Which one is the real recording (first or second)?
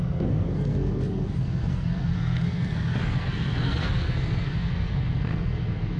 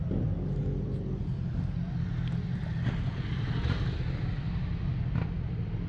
second